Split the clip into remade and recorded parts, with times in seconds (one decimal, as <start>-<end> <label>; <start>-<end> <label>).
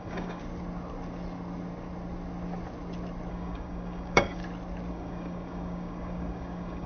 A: 0.0-0.4 remade; 0.4-3.3 recorded; 3.3-4.4 remade; 4.4-4.9 recorded; 4.9-6.9 remade